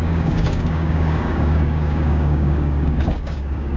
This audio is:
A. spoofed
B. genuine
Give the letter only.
A